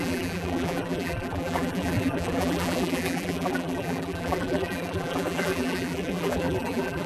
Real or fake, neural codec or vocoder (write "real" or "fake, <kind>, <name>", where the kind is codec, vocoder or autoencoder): fake, vocoder, BigVGAN v2